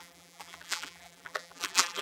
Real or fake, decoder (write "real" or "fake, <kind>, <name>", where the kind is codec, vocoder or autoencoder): fake, vocoder, BigVGAN v2